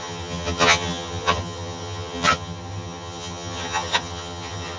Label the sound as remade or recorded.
remade